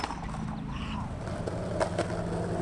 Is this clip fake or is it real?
real